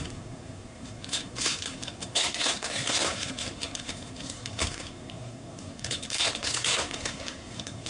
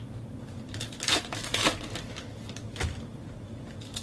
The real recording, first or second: second